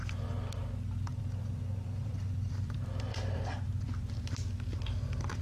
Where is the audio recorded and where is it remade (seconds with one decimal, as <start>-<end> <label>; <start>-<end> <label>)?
0.0-1.1 recorded; 1.1-4.3 remade; 4.3-5.4 recorded